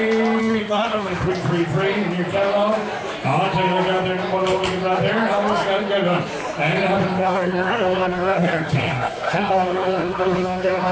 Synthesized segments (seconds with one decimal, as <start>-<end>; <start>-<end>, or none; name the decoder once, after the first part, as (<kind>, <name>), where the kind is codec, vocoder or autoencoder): 0.4-1.3 (codec, SNAC); 7.2-10.9